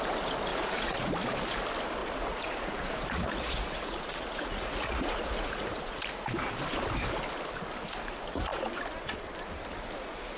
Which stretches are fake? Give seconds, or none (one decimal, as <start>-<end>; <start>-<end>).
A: 0.5-1.1; 2.0-6.0